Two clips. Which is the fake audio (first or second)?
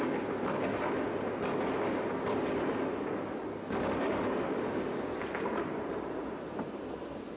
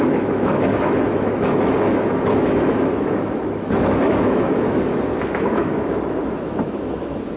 second